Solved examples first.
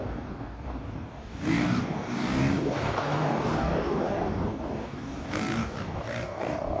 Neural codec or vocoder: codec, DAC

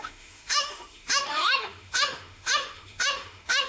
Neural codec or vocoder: autoencoder, DAC-VAE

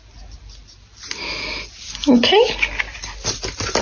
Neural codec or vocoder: none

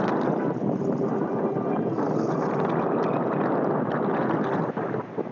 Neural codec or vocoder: none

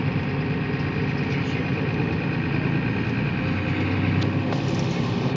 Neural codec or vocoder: none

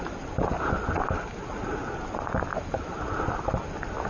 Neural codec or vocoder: none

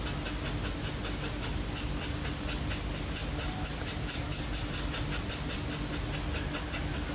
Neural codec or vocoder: none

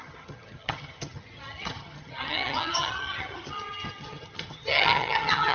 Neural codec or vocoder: vocoder, HiFi-GAN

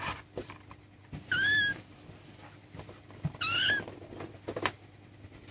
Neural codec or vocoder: none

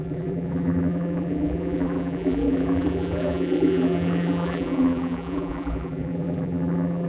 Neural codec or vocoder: vocoder, BigVGAN v2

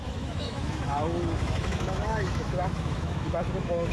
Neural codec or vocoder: autoencoder, DAC-VAE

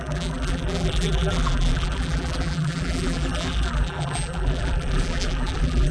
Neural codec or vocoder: vocoder, BigVGAN v2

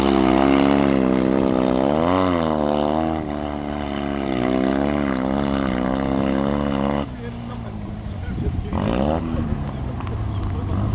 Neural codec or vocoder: none